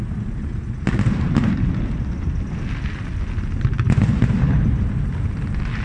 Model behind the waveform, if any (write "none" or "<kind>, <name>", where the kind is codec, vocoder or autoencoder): none